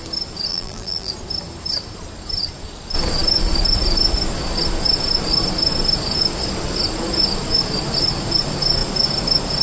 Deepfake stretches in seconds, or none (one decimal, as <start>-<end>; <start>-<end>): 0.5-1.1